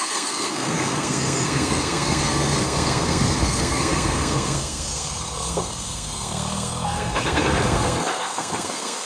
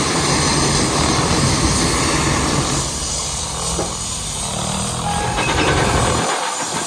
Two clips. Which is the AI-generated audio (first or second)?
first